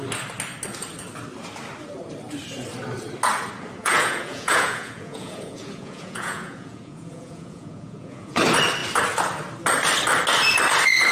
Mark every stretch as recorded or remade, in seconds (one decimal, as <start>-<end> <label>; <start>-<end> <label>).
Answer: 0.0-3.8 recorded; 3.8-8.4 remade; 8.4-11.1 recorded